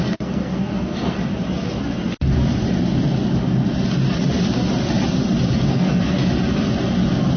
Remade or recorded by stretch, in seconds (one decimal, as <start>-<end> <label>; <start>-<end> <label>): 0.0-1.3 remade; 1.3-5.7 recorded; 5.7-6.2 remade; 6.2-7.4 recorded